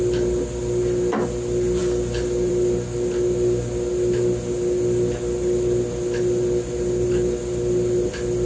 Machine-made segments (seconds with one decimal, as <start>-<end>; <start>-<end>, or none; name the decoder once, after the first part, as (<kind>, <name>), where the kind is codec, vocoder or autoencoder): none